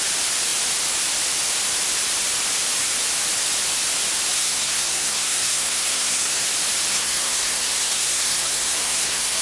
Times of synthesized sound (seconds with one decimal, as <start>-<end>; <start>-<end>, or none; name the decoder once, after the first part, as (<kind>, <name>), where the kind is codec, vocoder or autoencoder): 4.3-6.5 (codec, SNAC); 6.9-9.4